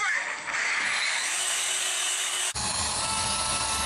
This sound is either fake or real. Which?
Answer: fake